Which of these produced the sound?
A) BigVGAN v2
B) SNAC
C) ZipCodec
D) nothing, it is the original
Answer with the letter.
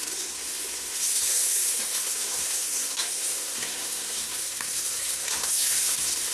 B